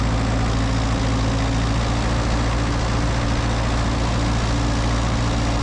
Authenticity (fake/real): real